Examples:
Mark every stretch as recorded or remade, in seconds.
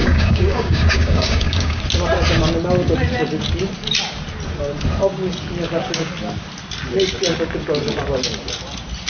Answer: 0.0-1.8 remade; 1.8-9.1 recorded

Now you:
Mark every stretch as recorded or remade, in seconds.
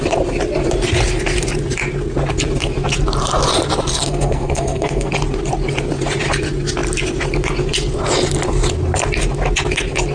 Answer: 0.0-3.9 recorded; 3.9-5.1 remade; 5.1-10.1 recorded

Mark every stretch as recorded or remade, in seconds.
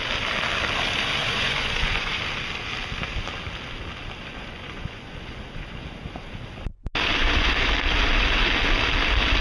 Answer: 0.0-1.2 recorded; 1.2-2.2 remade; 2.2-4.3 recorded; 4.3-5.4 remade; 5.4-7.2 recorded; 7.2-7.7 remade; 7.7-9.4 recorded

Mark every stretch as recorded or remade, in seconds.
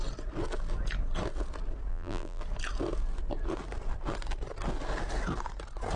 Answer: 0.0-1.9 recorded; 1.9-2.4 remade; 2.4-6.0 recorded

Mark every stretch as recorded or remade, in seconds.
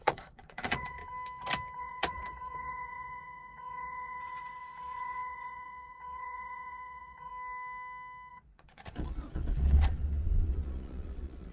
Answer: 0.0-1.0 remade; 1.0-1.8 recorded; 1.8-7.3 remade; 7.3-8.3 recorded; 8.3-11.5 remade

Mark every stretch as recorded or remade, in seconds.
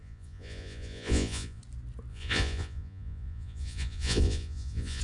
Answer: 0.0-1.6 remade; 1.6-2.1 recorded; 2.1-5.0 remade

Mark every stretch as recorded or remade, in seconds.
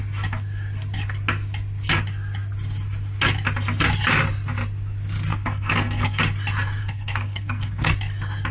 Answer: 0.0-5.3 recorded; 5.3-6.2 remade; 6.2-6.8 recorded; 6.8-7.9 remade; 7.9-8.5 recorded